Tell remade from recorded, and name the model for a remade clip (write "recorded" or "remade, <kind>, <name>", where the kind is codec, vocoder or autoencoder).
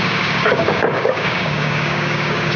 remade, codec, DAC